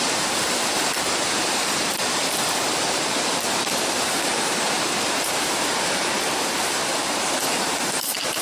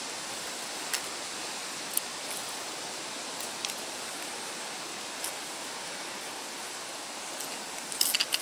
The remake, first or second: first